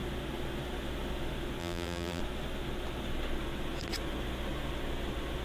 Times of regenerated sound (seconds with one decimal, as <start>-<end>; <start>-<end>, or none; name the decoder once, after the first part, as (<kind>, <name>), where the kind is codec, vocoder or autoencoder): 1.6-2.2 (vocoder, BigVGAN v2)